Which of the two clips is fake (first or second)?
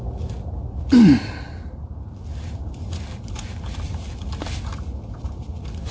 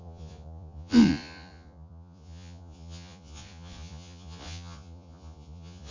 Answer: second